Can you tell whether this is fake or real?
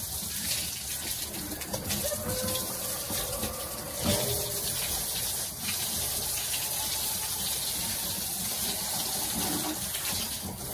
real